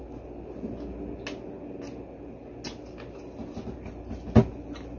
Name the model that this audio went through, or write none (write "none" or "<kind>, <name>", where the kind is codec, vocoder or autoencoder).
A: none